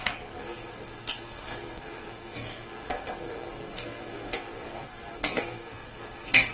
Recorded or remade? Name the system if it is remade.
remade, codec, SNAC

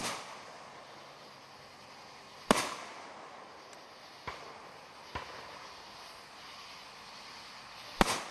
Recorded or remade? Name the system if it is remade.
recorded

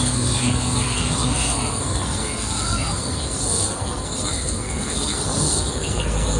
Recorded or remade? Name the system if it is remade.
remade, codec, SNAC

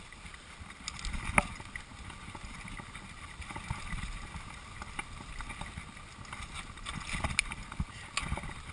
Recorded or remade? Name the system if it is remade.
recorded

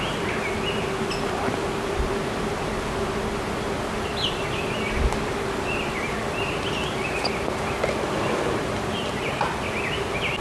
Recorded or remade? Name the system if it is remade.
recorded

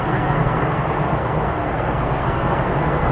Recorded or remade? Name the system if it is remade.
remade, codec, SNAC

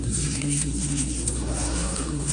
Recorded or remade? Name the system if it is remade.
remade, codec, SNAC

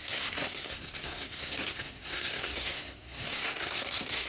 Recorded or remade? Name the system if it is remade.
remade, codec, SNAC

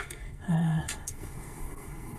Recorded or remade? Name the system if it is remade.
remade, codec, SNAC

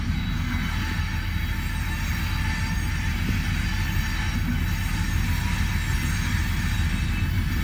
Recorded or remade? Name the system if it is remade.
recorded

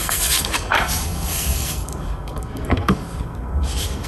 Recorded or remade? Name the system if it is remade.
remade, codec, SNAC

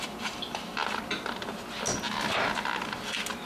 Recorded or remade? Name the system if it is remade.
recorded